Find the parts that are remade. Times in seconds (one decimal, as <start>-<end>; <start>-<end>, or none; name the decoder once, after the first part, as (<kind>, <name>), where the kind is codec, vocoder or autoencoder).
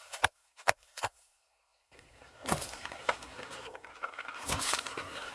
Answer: 0.0-5.3 (codec, SNAC)